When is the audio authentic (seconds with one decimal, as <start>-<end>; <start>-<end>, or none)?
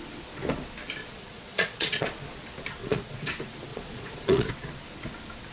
0.0-1.0; 2.1-2.8; 3.3-3.7; 4.5-5.5